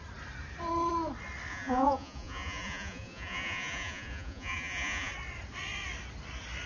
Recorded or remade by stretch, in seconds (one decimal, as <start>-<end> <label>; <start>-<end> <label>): 0.0-1.5 recorded; 1.5-5.1 remade; 5.1-6.7 recorded